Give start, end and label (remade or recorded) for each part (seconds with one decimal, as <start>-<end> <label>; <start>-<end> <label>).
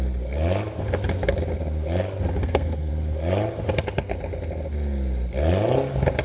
0.0-2.4 recorded; 2.4-2.9 remade; 2.9-6.2 recorded